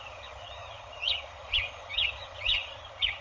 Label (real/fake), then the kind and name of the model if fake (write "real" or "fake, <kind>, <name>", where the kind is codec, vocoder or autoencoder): fake, vocoder, HiFi-GAN